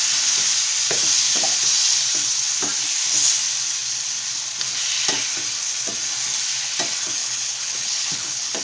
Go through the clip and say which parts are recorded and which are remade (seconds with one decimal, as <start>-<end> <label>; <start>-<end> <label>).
0.0-7.2 recorded; 7.2-8.6 remade